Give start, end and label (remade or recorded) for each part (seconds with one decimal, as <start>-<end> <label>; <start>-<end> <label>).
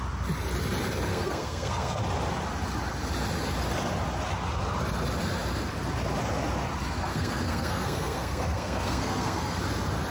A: 0.0-1.1 recorded; 1.1-2.0 remade; 2.0-7.1 recorded; 7.1-9.6 remade; 9.6-10.1 recorded